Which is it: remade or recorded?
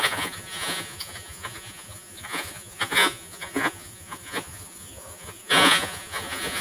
remade